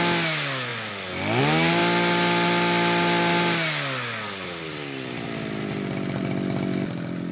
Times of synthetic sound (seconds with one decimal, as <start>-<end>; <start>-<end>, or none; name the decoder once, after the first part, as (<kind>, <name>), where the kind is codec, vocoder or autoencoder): none